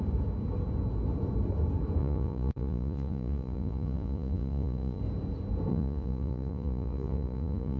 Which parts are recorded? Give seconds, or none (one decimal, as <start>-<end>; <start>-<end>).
0.0-2.0; 5.0-5.7